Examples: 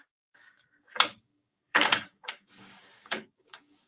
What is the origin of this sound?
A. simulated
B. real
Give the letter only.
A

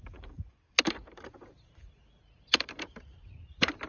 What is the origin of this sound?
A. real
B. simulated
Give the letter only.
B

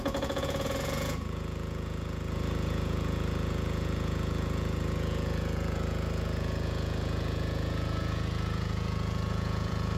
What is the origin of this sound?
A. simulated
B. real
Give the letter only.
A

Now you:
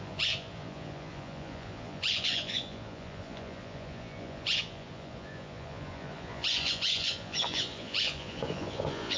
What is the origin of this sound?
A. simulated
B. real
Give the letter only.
A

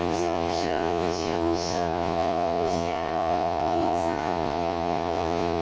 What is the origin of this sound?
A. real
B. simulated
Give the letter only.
B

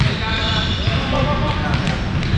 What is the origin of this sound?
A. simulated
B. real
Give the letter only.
B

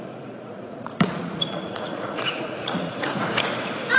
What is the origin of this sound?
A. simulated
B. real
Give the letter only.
A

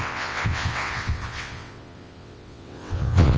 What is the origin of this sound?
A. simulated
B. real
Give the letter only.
A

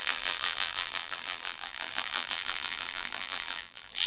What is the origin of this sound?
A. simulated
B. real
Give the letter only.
A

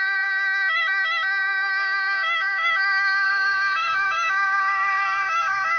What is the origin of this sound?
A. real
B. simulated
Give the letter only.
B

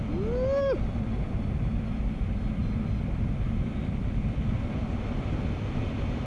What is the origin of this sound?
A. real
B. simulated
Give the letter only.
A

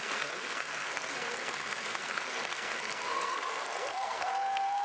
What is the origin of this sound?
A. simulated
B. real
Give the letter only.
A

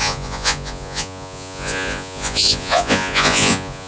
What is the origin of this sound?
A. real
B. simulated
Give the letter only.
B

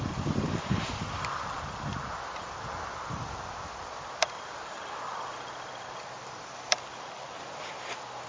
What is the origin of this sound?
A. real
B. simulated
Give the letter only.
A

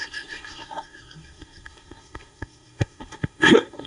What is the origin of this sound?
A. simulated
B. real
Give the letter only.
A